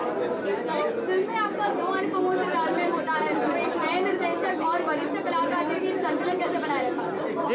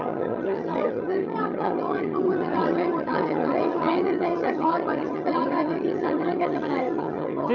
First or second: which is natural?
first